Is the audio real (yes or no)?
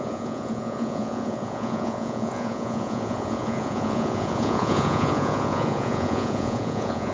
no